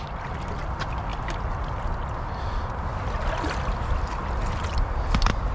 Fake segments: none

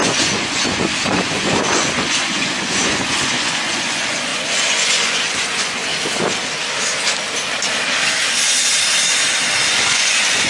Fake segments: 0.0-5.9 (vocoder, Vocos); 9.7-10.5

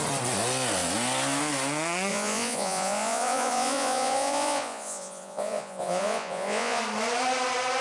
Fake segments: 2.1-6.8 (vocoder, Vocos)

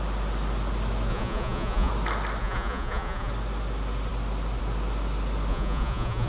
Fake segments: 1.1-1.9 (vocoder, Vocos); 2.4-3.3; 5.5-6.3

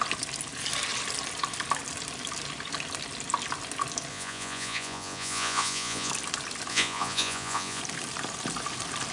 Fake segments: 4.1-6.1 (vocoder, Vocos); 6.7-7.8